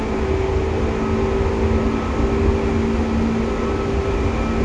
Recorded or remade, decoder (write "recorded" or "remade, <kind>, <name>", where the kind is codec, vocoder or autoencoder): recorded